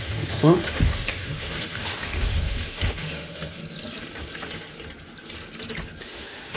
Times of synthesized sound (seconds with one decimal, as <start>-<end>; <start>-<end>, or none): 0.0-3.6; 6.0-6.6